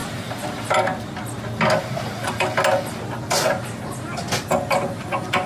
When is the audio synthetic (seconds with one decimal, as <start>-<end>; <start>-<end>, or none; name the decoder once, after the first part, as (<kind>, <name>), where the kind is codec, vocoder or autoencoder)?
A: none